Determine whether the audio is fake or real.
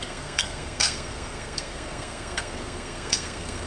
fake